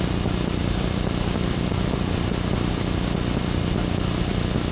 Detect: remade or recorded remade